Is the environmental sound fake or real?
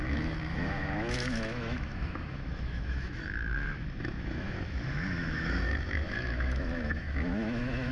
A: fake